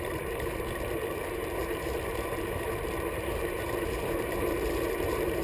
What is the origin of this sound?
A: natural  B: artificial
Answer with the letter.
B